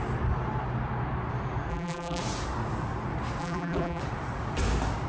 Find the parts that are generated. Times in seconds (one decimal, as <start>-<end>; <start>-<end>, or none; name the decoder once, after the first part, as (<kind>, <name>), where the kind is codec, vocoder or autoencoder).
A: 1.7-2.2 (vocoder, BigVGAN v2); 3.4-4.0